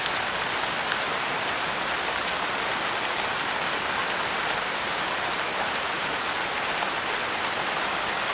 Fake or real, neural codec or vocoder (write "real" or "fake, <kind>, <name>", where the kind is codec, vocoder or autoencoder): real